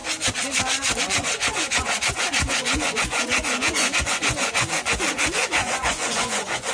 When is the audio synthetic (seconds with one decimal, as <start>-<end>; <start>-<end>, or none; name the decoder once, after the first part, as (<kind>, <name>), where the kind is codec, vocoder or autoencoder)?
1.0-6.7 (vocoder, Vocos)